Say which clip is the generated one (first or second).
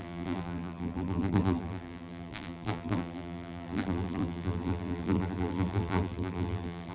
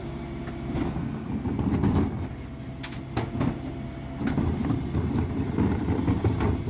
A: first